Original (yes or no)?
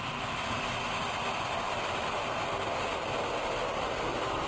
yes